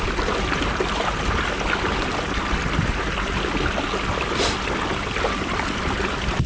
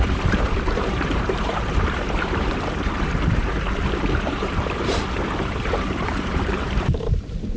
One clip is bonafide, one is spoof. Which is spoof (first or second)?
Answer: second